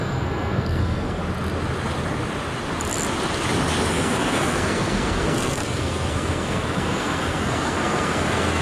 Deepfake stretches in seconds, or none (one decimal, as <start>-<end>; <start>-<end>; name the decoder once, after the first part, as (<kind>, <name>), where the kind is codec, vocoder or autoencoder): 0.0-1.2 (codec, SNAC); 3.9-8.6